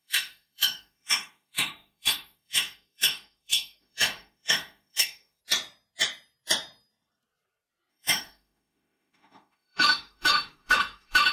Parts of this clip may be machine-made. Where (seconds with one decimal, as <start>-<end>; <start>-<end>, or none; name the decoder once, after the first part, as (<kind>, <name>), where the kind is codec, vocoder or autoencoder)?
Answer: 0.0-5.4 (autoencoder, DAC-VAE); 7.9-11.3